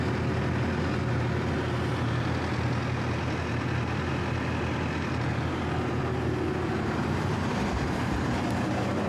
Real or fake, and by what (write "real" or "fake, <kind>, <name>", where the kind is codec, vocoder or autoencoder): real